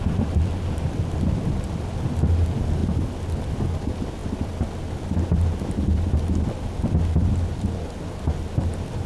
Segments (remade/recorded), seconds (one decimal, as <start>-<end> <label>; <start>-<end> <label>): 0.0-9.1 recorded